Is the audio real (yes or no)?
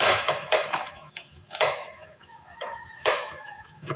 no